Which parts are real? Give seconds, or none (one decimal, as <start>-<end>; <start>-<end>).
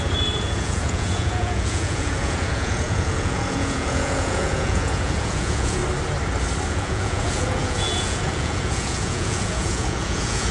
5.8-6.7